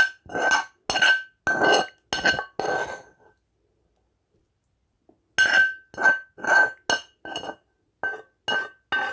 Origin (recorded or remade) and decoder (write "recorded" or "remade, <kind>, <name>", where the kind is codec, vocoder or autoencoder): recorded